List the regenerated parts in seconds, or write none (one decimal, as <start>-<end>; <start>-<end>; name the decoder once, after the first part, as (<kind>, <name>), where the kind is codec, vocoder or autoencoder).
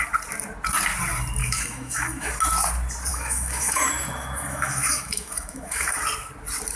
1.4-2.3 (autoencoder, DAC-VAE); 3.1-6.0